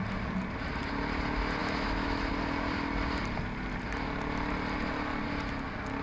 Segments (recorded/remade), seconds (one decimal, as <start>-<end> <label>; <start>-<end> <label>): 0.0-1.6 recorded; 1.6-2.3 remade; 2.3-6.0 recorded